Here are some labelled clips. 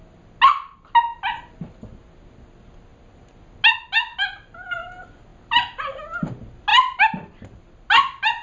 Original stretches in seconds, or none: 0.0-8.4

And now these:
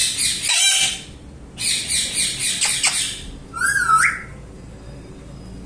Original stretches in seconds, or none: 0.0-5.7

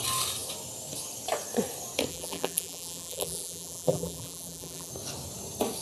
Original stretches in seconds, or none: 0.0-2.1; 4.9-5.8

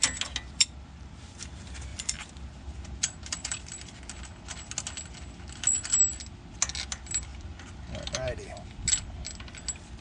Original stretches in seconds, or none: 0.0-1.9; 4.0-10.0

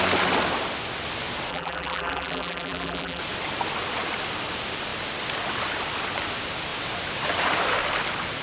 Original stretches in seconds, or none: 0.0-1.5; 3.2-8.4